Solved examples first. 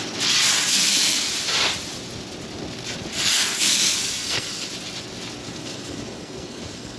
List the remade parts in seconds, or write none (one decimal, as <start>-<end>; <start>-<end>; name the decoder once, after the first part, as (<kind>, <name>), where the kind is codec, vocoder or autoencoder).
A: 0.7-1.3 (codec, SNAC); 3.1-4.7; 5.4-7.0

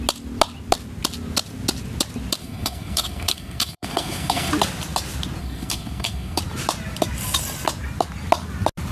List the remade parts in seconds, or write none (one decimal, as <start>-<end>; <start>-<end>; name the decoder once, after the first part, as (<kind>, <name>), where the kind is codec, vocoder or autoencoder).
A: 2.4-4.5 (codec, SNAC); 5.4-6.4

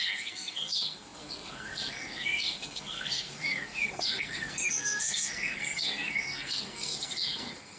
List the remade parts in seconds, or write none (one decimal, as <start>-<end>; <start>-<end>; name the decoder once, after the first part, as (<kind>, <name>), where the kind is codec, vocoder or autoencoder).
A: 0.0-7.8 (codec, SNAC)

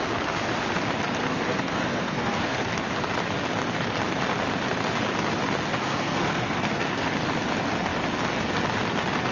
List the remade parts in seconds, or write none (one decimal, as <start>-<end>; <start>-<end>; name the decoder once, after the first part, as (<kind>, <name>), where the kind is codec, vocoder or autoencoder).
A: 1.2-2.7 (codec, SNAC); 5.7-7.1

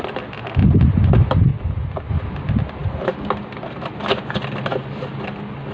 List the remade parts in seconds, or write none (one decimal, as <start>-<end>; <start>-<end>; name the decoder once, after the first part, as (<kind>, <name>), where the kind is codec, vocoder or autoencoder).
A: none

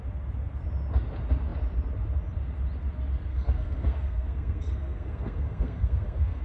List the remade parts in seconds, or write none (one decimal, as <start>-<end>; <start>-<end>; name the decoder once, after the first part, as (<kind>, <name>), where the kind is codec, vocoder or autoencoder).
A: 3.3-6.4 (codec, SNAC)

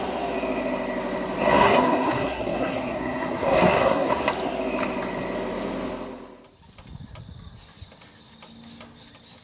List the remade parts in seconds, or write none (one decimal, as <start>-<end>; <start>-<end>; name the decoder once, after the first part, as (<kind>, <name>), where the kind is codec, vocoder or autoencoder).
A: 1.6-4.1 (codec, SNAC)